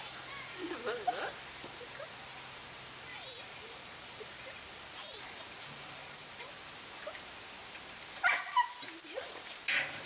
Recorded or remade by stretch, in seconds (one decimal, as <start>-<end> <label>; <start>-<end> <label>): 0.0-3.1 recorded; 3.1-4.8 remade; 4.8-6.0 recorded; 6.0-6.5 remade; 6.5-10.1 recorded